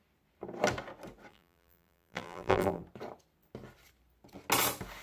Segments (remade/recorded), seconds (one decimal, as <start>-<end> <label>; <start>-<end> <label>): 0.0-1.3 recorded; 1.3-2.8 remade; 2.8-5.0 recorded